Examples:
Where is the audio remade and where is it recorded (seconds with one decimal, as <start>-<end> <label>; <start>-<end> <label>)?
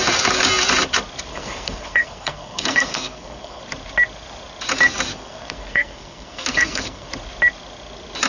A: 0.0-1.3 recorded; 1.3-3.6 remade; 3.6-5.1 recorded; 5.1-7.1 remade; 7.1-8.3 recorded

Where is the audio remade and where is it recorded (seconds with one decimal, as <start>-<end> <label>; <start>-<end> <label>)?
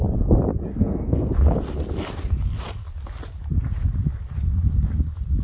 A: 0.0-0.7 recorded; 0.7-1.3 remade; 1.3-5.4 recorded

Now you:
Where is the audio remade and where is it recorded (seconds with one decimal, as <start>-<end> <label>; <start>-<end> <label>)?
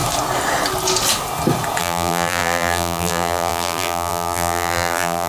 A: 0.0-1.8 recorded; 1.8-5.3 remade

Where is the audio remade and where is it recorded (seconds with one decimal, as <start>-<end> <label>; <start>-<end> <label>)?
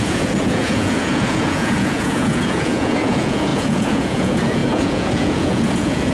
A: 0.0-6.1 remade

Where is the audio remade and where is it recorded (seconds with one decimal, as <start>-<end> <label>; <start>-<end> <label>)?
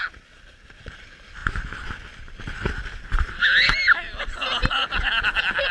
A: 0.0-5.7 recorded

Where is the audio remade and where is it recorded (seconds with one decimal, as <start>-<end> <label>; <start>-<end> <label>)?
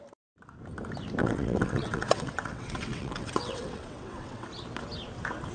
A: 0.0-1.2 recorded; 1.2-4.5 remade; 4.5-5.5 recorded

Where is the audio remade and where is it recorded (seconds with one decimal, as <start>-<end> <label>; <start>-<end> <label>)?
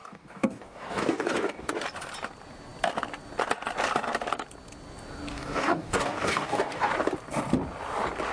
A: 0.0-1.7 remade; 1.7-5.3 recorded; 5.3-6.9 remade; 6.9-8.3 recorded